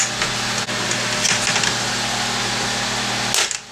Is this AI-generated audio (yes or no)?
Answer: no